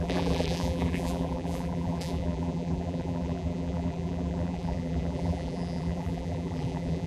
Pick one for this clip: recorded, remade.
remade